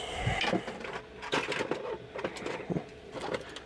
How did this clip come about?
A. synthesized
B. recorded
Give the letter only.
B